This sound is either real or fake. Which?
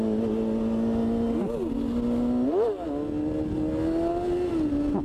real